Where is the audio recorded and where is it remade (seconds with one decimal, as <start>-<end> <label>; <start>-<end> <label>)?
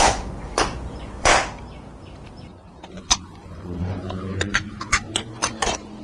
0.0-1.3 remade; 1.3-2.9 recorded; 2.9-6.0 remade